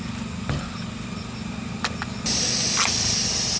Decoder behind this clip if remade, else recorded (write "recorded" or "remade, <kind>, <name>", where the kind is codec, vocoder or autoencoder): recorded